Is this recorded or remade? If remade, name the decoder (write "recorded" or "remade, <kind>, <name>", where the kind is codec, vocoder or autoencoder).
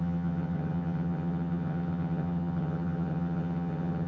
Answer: remade, vocoder, HiFi-GAN